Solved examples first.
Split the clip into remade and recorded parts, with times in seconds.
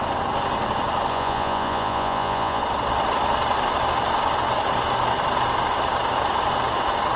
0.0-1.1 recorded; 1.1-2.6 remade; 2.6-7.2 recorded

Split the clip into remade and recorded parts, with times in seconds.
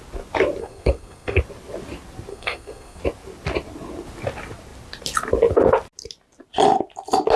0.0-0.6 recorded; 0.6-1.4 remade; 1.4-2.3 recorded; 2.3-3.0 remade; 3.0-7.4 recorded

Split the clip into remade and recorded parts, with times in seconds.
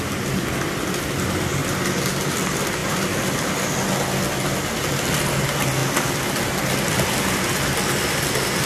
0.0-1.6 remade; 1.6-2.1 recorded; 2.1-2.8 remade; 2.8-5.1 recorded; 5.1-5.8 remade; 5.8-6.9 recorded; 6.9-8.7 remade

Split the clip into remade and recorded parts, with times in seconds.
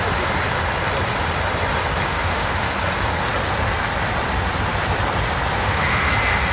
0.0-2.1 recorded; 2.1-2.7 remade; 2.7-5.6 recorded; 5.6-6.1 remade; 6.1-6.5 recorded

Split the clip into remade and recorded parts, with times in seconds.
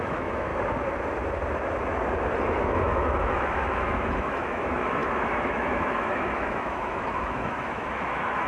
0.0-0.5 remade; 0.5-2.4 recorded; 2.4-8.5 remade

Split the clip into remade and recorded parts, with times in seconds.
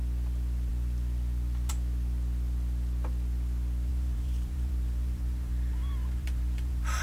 0.0-3.9 recorded; 3.9-7.0 remade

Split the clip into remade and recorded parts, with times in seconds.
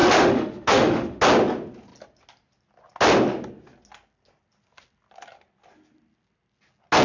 0.0-1.2 remade; 1.2-7.0 recorded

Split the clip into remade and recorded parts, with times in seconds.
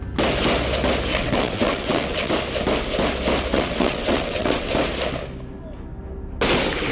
0.0-1.1 recorded; 1.1-2.3 remade; 2.3-3.5 recorded; 3.5-4.7 remade; 4.7-6.9 recorded